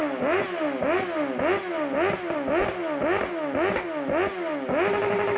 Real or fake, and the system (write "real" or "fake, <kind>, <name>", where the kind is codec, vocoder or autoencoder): real